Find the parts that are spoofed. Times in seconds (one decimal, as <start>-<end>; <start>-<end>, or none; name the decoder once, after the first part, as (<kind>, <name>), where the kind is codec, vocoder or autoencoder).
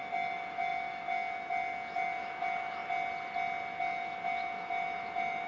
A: 0.0-2.8 (autoencoder, DAC-VAE); 3.8-5.5